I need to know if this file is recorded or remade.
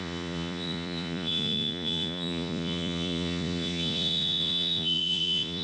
remade